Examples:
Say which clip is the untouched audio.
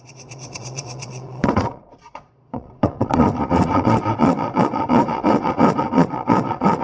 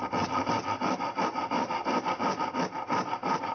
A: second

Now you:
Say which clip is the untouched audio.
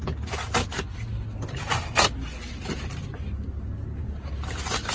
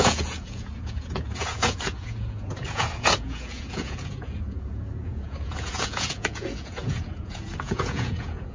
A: first